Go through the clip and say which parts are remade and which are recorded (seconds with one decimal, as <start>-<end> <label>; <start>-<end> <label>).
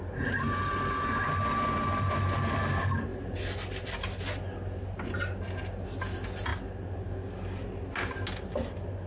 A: 0.0-9.1 recorded